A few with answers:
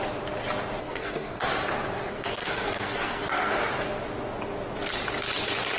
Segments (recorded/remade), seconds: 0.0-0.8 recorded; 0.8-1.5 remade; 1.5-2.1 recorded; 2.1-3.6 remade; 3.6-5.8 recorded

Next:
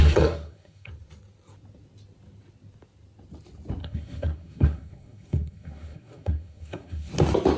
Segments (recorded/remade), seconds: 0.0-0.9 remade; 0.9-3.8 recorded; 3.8-7.1 remade; 7.1-7.6 recorded

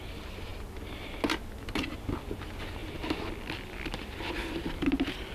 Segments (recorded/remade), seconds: 0.0-5.3 recorded

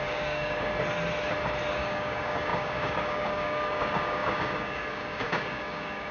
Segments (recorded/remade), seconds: 0.0-0.7 remade; 0.7-1.7 recorded; 1.7-6.1 remade

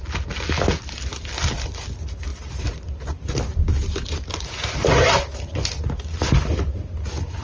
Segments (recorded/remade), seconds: 0.0-7.4 recorded

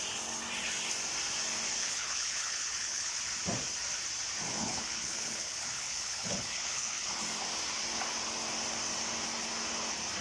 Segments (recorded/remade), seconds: 0.0-1.8 recorded; 1.8-3.2 remade; 3.2-4.6 recorded; 4.6-7.2 remade; 7.2-10.2 recorded